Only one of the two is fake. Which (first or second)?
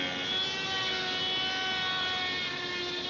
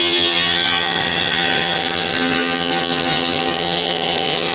second